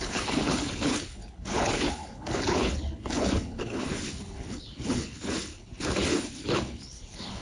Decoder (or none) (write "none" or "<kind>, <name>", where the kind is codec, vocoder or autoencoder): codec, HILCodec